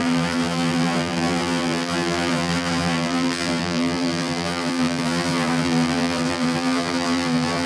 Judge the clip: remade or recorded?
remade